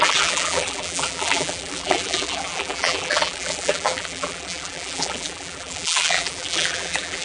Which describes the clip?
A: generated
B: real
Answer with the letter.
A